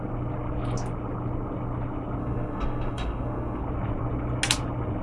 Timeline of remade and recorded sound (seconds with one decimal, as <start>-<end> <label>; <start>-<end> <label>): 0.0-2.2 recorded; 2.2-3.6 remade; 3.6-5.0 recorded